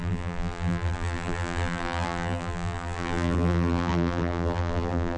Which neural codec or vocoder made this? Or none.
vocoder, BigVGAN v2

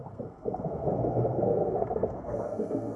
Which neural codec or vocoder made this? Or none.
codec, SNAC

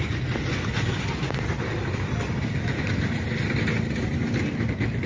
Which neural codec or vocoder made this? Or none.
none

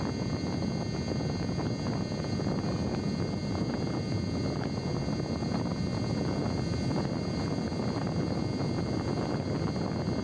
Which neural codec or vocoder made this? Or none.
none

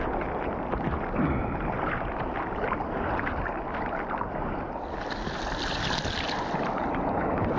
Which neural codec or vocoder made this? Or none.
none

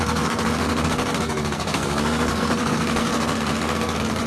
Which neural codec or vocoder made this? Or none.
codec, SNAC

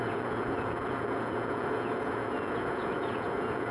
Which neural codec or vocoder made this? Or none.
vocoder, Vocos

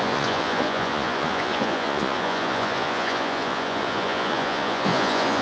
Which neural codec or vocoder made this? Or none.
vocoder, Vocos